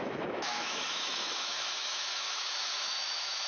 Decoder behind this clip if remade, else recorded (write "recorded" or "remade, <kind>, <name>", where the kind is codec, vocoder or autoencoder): remade, autoencoder, DAC-VAE